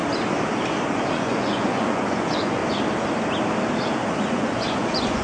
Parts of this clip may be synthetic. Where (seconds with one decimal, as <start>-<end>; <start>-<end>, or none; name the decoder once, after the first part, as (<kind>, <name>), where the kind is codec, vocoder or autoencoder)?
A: 0.9-2.6 (vocoder, Vocos); 4.3-5.2